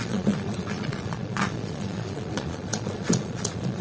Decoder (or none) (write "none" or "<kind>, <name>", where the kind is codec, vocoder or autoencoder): vocoder, Vocos